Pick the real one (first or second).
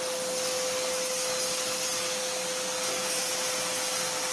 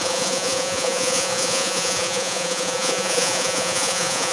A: first